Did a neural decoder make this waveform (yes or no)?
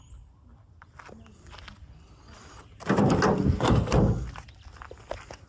no